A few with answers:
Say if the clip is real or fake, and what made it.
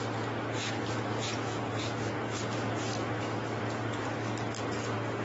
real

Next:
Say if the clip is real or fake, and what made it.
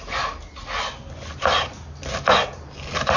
real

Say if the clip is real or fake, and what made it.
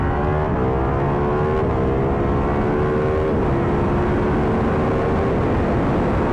real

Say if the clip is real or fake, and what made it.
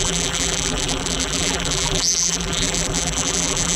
fake, vocoder, BigVGAN v2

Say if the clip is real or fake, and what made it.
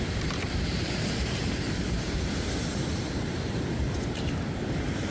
fake, vocoder, BigVGAN v2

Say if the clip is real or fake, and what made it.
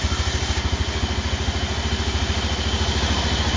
real